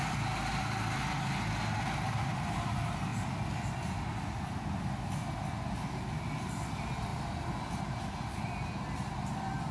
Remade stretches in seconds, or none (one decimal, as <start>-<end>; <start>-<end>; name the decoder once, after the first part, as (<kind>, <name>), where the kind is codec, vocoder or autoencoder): none